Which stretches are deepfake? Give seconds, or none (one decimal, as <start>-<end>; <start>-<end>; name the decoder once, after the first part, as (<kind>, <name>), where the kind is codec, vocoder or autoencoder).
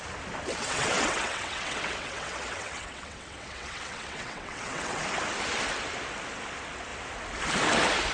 0.5-5.0 (vocoder, WaveNeXt)